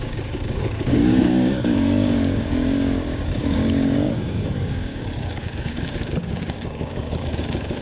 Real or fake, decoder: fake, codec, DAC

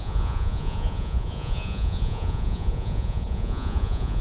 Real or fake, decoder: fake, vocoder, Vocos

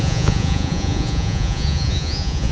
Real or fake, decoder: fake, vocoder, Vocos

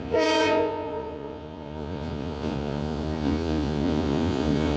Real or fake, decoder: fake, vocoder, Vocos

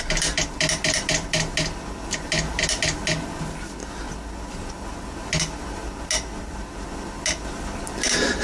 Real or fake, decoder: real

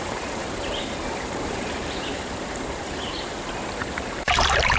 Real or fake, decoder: fake, vocoder, BigVGAN v2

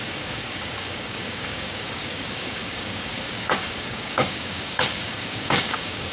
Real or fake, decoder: fake, codec, DAC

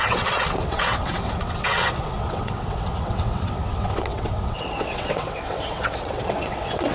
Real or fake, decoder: fake, vocoder, WaveNeXt